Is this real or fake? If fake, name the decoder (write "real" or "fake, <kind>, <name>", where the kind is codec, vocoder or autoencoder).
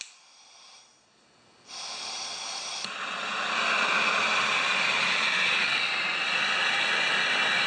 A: real